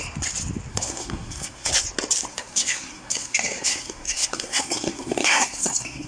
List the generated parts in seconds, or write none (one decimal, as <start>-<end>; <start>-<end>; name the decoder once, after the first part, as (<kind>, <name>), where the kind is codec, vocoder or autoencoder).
0.7-1.7 (codec, SNAC); 2.3-6.1